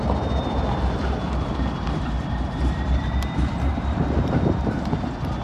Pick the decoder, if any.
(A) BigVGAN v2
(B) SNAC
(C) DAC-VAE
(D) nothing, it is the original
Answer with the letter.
A